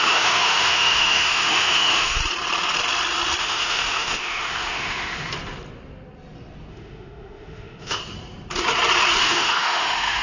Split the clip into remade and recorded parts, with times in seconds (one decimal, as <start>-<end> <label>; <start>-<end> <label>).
0.0-2.2 remade; 2.2-3.4 recorded; 3.4-5.3 remade; 5.3-6.7 recorded; 6.7-8.0 remade; 8.0-9.2 recorded; 9.2-10.2 remade